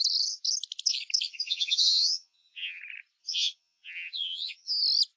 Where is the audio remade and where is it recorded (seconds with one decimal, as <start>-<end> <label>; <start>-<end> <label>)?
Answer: 0.0-1.3 recorded; 1.3-2.8 remade; 2.8-3.2 recorded; 3.2-4.7 remade; 4.7-5.2 recorded